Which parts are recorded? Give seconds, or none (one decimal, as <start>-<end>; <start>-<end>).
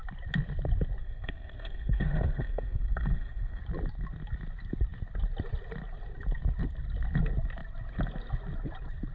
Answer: 0.0-1.0; 3.6-9.1